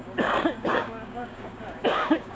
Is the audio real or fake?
fake